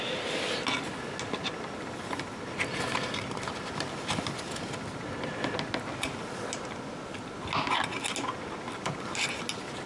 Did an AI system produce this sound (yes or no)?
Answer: no